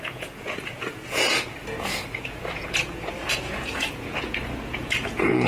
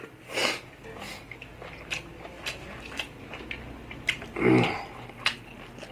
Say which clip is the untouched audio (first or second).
second